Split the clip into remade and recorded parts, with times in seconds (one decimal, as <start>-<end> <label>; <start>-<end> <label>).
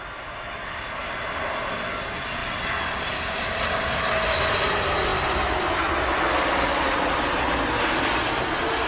0.0-8.9 recorded